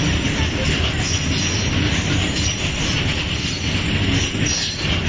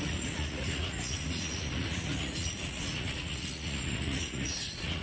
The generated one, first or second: second